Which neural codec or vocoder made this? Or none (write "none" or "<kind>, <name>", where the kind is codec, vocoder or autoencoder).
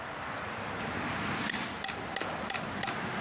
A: none